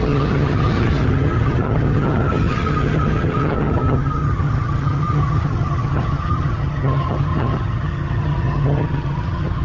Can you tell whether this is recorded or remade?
remade